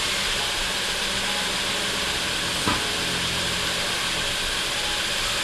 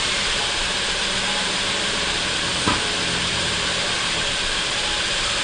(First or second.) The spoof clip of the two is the second